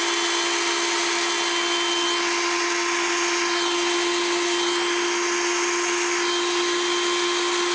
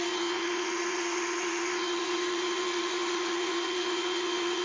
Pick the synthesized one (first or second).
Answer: second